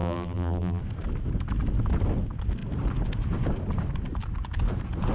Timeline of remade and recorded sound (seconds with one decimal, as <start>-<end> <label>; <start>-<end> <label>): 0.0-0.8 remade; 0.8-5.1 recorded